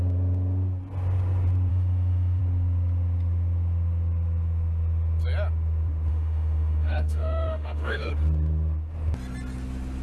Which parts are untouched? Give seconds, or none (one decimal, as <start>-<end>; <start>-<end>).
0.0-1.7; 2.4-6.1; 8.1-10.0